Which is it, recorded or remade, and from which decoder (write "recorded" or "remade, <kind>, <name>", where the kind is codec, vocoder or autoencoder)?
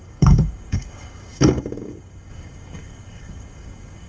remade, codec, DAC